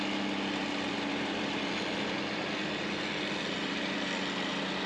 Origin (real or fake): real